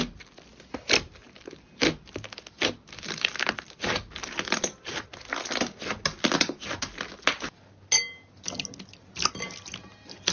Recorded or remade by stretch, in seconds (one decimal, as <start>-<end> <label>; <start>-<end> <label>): 0.0-10.3 recorded